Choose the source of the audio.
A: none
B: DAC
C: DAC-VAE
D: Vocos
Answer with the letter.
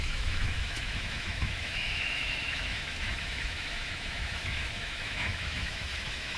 C